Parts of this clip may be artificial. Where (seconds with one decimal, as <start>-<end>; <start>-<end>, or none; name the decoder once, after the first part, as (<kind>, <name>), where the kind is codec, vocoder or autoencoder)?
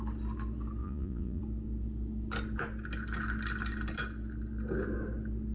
0.8-1.4 (vocoder, Vocos)